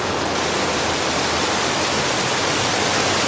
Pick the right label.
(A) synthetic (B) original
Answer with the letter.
B